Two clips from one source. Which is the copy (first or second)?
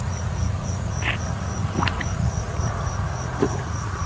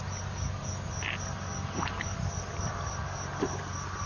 first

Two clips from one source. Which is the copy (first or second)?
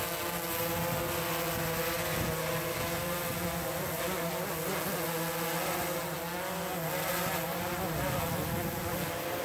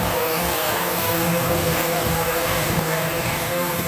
second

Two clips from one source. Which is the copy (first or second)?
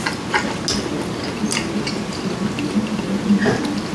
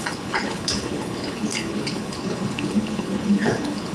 second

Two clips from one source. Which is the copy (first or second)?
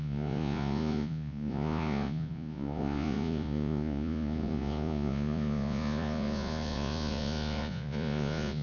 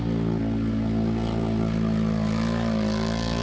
first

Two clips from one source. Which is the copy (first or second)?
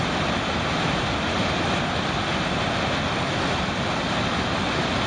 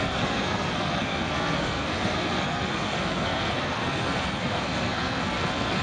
second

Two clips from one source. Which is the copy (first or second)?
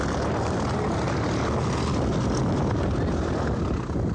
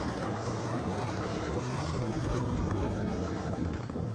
second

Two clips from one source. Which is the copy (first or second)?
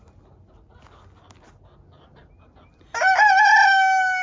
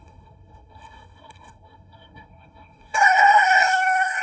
second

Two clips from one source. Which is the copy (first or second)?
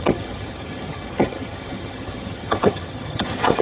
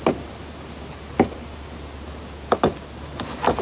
first